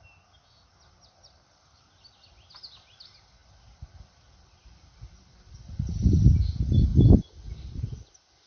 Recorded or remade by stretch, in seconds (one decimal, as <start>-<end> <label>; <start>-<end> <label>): 0.0-3.4 recorded; 3.4-6.2 remade; 6.2-6.9 recorded; 6.9-7.8 remade; 7.8-8.5 recorded